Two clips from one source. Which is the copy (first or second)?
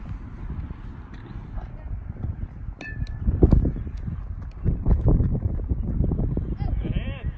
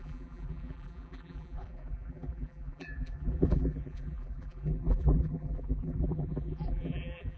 second